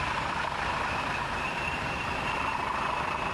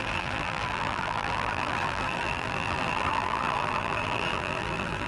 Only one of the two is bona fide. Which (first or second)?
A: first